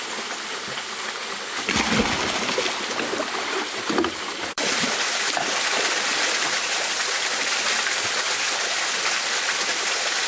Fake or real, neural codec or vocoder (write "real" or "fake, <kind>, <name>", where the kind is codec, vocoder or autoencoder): fake, vocoder, BigVGAN v2